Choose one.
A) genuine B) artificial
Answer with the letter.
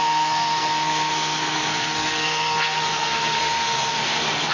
B